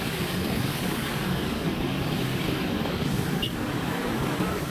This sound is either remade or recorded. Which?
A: remade